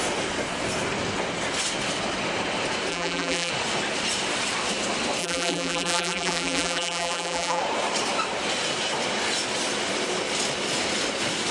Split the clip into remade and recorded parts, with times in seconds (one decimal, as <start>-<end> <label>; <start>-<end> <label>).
0.0-2.9 recorded; 2.9-3.5 remade; 3.5-5.2 recorded; 5.2-7.6 remade; 7.6-11.5 recorded

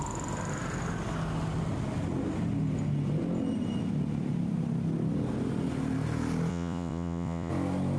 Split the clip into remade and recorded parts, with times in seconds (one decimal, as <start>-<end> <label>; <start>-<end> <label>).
0.0-6.5 recorded; 6.5-7.5 remade; 7.5-8.0 recorded

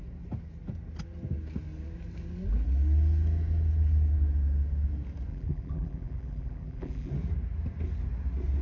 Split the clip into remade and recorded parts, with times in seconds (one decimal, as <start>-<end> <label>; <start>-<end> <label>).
0.0-5.3 recorded; 5.3-7.1 remade; 7.1-8.6 recorded

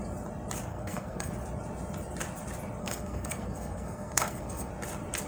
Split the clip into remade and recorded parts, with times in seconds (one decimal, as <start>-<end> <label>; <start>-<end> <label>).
0.0-0.7 recorded; 0.7-1.3 remade; 1.3-2.8 recorded; 2.8-4.7 remade; 4.7-5.3 recorded

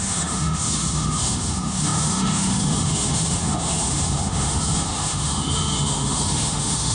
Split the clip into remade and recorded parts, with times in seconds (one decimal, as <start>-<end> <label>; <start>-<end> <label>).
0.0-6.9 remade

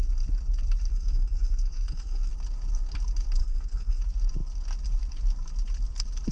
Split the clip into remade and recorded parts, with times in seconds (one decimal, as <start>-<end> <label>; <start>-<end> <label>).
0.0-0.9 recorded; 0.9-2.3 remade; 2.3-3.4 recorded; 3.4-4.0 remade; 4.0-6.3 recorded